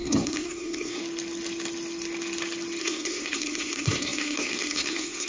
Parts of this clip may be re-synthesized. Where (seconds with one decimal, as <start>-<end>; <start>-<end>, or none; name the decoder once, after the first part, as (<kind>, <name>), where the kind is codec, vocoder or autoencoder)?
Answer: 0.0-1.0 (codec, SNAC); 2.8-5.3